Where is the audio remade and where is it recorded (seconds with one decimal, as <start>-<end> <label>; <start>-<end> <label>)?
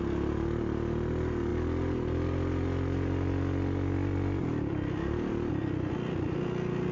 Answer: 0.0-6.9 recorded